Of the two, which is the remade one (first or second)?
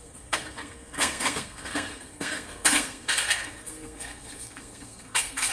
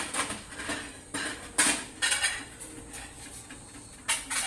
first